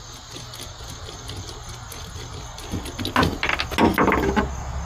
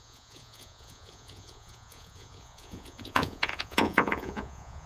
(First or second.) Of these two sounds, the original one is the first